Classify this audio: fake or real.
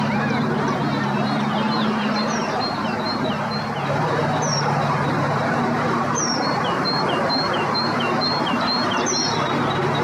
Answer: fake